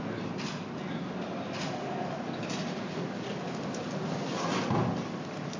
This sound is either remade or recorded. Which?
recorded